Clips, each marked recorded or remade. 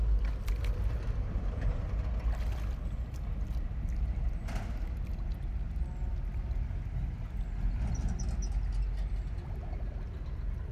recorded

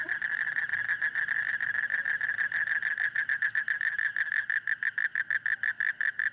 recorded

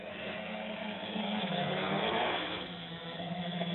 remade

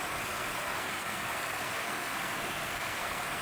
remade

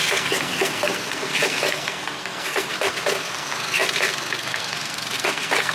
remade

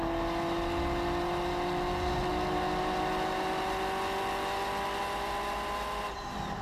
recorded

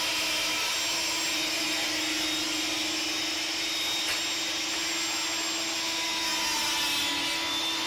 recorded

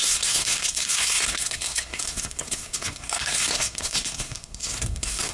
remade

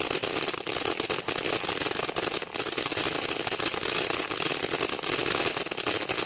recorded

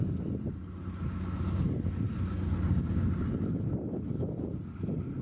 recorded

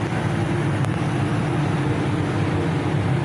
recorded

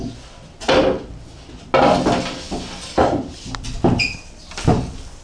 recorded